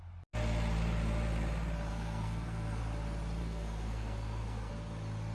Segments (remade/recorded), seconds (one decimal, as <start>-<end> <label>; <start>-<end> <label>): 0.0-1.9 recorded; 1.9-2.8 remade; 2.8-3.4 recorded; 3.4-4.7 remade; 4.7-5.3 recorded